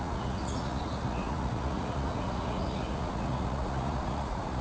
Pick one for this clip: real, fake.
fake